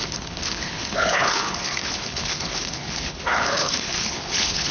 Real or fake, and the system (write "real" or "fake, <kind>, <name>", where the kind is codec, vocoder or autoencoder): fake, codec, HILCodec